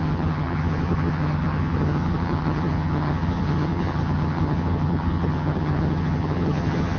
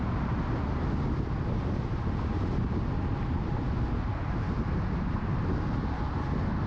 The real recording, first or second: second